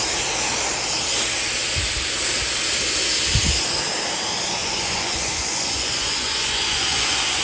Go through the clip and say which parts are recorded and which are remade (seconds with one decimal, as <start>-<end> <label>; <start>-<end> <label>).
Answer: 0.0-4.6 recorded; 4.6-7.4 remade